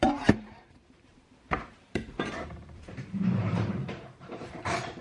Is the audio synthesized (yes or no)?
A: yes